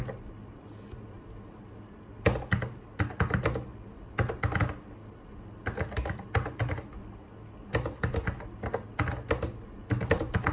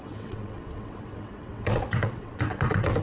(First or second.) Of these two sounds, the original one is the first